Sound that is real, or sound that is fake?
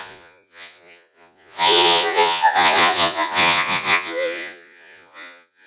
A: fake